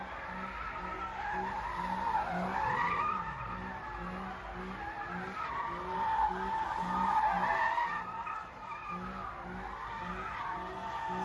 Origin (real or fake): real